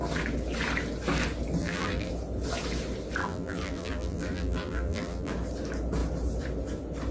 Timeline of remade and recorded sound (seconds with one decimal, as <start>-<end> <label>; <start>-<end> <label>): 0.0-1.6 recorded; 1.6-2.1 remade; 2.1-3.2 recorded; 3.2-5.3 remade; 5.3-7.1 recorded